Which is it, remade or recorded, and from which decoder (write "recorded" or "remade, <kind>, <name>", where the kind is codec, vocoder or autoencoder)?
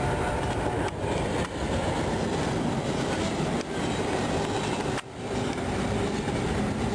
recorded